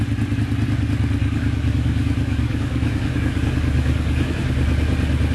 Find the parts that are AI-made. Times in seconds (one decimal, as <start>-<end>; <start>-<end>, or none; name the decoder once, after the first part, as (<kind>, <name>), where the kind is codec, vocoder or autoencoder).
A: 1.2-4.4 (codec, DAC)